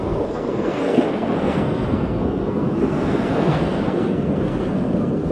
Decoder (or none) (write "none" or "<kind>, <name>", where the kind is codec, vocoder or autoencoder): codec, SNAC